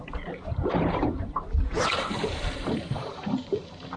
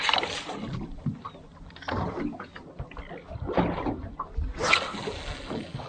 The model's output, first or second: first